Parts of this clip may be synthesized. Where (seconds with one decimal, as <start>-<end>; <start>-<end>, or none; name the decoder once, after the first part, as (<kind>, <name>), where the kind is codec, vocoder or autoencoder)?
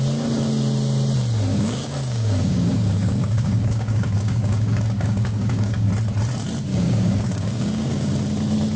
1.5-5.9 (codec, DAC); 6.7-8.1